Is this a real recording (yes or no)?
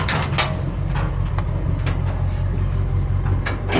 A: yes